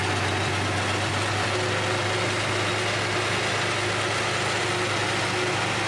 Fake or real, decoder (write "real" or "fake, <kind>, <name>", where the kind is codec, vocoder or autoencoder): real